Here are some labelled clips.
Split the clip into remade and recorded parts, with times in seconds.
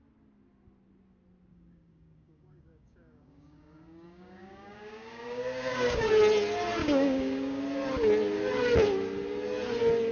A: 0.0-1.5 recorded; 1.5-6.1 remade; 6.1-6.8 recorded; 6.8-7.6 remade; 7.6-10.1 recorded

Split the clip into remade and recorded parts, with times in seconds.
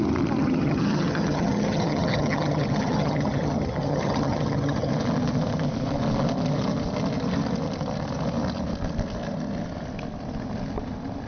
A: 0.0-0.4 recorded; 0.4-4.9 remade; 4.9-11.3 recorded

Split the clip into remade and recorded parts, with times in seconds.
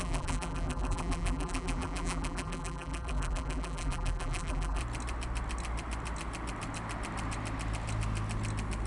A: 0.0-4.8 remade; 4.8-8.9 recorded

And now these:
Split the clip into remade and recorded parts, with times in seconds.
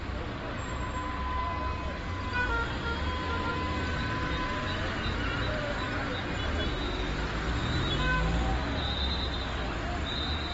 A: 0.0-8.5 recorded; 8.5-9.1 remade; 9.1-10.5 recorded